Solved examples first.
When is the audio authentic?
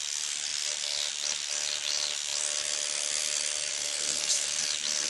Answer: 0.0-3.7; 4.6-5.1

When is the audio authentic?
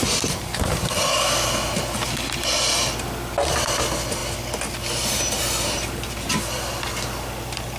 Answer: 0.0-7.8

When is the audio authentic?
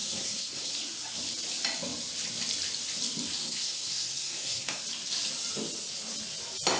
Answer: 0.7-3.4; 4.8-6.8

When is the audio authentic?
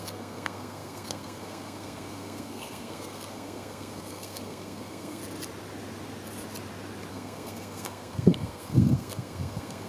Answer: 5.2-7.1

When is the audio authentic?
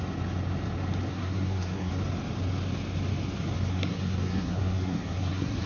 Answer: 0.0-1.1; 1.9-3.7